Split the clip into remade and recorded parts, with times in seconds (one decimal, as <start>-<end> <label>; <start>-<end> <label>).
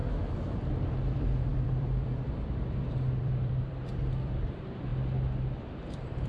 0.0-0.6 recorded; 0.6-4.9 remade; 4.9-5.6 recorded; 5.6-6.3 remade